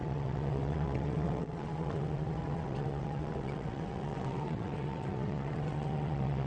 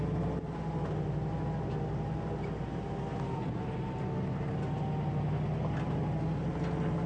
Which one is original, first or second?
second